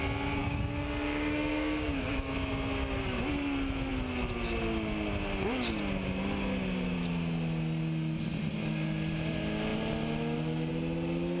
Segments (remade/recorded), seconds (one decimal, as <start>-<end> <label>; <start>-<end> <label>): 0.0-0.4 recorded; 0.4-2.3 remade; 2.3-11.4 recorded